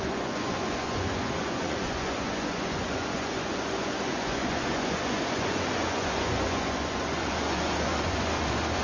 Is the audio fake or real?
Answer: fake